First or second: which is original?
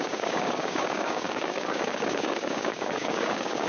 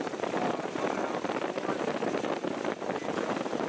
second